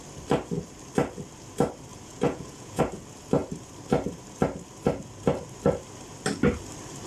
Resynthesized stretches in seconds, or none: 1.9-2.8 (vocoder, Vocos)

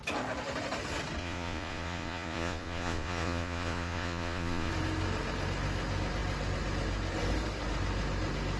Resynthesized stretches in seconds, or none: 1.2-4.7 (vocoder, Vocos)

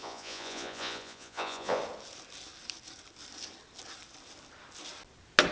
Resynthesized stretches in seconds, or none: 0.0-1.8 (vocoder, Vocos)

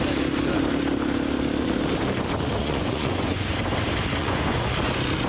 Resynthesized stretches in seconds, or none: 2.6-3.5 (vocoder, Vocos); 4.2-4.7